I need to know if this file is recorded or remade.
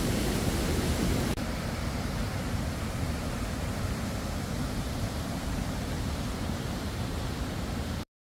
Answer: remade